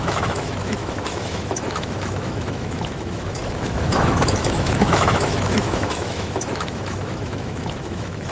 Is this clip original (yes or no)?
no